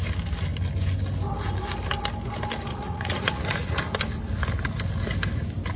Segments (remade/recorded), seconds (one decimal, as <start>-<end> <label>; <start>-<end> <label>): 0.0-2.7 recorded; 2.7-3.8 remade; 3.8-5.8 recorded